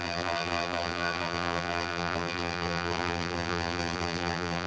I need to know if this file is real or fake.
fake